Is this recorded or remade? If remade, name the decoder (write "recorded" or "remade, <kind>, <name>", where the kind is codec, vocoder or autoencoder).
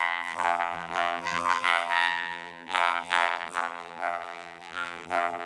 remade, vocoder, BigVGAN v2